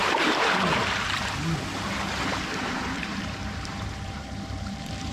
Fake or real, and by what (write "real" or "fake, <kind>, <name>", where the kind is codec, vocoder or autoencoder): fake, vocoder, BigVGAN v2